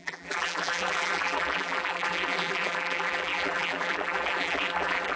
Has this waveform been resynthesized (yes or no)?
yes